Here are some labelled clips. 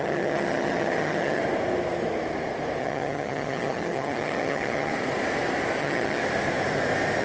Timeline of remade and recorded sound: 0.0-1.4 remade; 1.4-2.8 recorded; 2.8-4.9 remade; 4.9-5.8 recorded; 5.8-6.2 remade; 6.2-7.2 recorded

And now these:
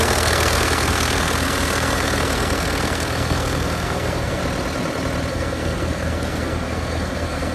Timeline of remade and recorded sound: 0.0-4.4 remade; 4.4-5.3 recorded; 5.3-7.5 remade